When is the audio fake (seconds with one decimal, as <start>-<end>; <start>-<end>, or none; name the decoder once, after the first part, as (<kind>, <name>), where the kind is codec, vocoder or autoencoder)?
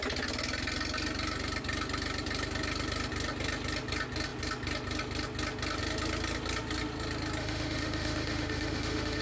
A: 7.4-9.2 (autoencoder, DAC-VAE)